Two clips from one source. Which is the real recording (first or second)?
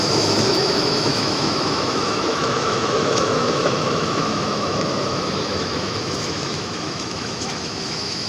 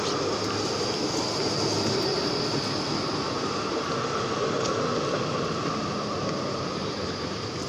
second